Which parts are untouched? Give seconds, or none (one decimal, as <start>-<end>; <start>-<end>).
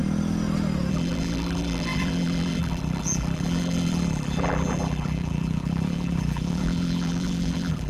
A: 0.0-0.9